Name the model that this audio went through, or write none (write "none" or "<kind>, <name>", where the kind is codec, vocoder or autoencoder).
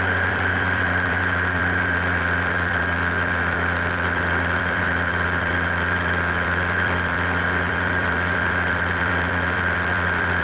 vocoder, BigVGAN v2